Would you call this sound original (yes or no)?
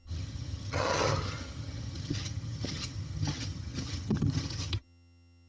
no